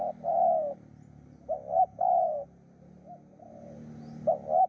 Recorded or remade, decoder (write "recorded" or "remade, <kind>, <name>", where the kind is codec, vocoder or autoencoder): recorded